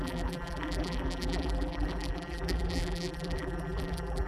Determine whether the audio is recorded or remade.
remade